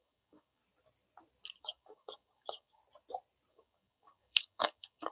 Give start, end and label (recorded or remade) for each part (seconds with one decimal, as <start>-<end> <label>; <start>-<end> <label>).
0.0-0.6 remade; 0.6-1.6 recorded; 1.6-2.8 remade; 2.8-3.5 recorded; 3.5-5.1 remade